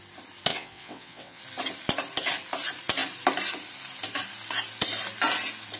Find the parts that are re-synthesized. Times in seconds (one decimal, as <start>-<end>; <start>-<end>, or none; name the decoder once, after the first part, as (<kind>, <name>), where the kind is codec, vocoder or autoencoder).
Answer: 0.5-1.4 (vocoder, WaveNeXt)